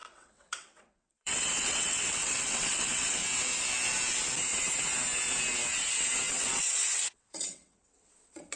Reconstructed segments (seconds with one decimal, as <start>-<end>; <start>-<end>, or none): 0.0-3.2; 6.3-8.6

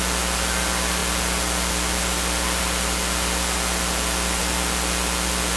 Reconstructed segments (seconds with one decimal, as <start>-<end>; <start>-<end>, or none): none

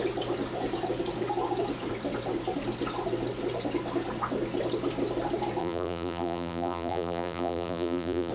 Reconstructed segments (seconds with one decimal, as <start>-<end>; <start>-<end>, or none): 5.6-8.3

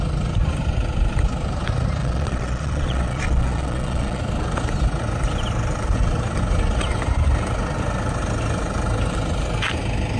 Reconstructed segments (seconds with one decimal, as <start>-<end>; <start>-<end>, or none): 2.0-4.2

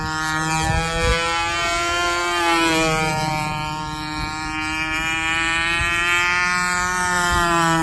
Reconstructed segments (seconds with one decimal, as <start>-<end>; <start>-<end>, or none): none

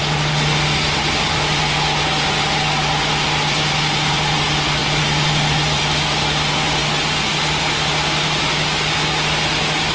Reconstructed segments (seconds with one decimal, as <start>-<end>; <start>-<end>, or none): none